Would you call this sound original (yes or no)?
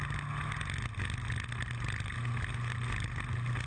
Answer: yes